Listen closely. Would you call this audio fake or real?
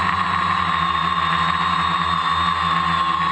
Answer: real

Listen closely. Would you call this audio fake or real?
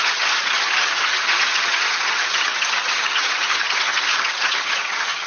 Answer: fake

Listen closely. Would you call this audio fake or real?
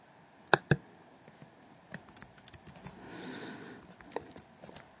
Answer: real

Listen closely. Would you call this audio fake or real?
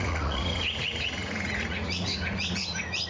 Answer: fake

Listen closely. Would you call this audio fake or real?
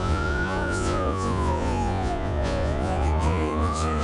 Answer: fake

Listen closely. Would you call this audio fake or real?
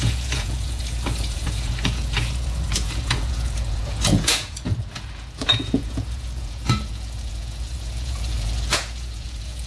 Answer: fake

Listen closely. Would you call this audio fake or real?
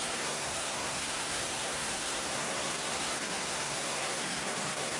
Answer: fake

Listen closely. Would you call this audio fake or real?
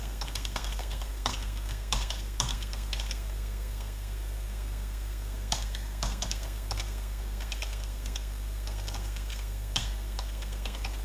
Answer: fake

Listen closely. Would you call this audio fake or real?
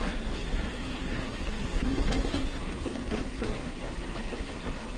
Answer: fake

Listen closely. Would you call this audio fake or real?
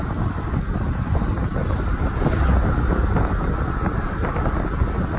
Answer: real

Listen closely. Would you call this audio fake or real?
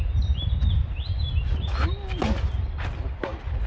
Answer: real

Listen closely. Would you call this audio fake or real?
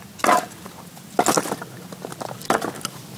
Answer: real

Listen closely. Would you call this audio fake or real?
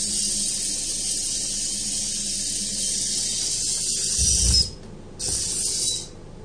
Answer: real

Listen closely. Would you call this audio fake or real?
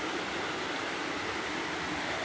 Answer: real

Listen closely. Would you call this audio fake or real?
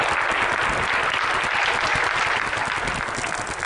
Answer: real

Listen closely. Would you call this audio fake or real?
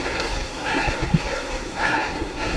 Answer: fake